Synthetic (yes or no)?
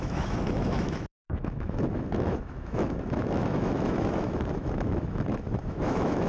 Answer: yes